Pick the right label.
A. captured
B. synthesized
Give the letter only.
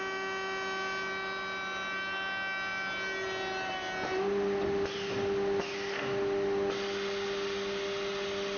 A